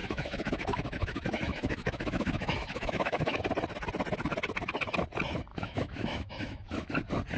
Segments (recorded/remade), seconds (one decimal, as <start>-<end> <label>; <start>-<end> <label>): 0.0-3.4 remade; 3.4-5.5 recorded; 5.5-6.9 remade; 6.9-7.4 recorded